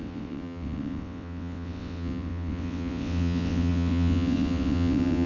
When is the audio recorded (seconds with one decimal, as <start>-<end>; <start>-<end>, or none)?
none

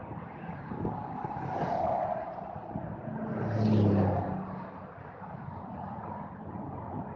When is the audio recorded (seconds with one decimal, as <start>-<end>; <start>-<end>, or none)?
0.0-7.2

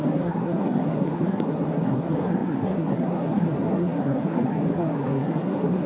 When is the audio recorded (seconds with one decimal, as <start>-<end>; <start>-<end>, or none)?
none

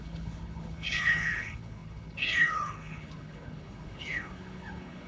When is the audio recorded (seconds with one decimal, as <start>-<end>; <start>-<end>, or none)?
none

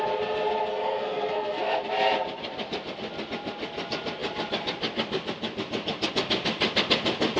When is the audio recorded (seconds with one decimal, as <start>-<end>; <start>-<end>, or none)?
0.0-0.7; 1.8-7.4

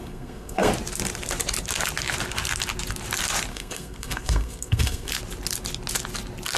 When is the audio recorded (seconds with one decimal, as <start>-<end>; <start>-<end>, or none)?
0.7-3.5; 5.1-6.6